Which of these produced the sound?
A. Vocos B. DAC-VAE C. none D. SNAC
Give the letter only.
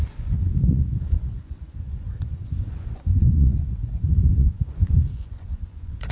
A